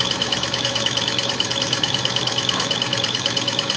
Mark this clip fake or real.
fake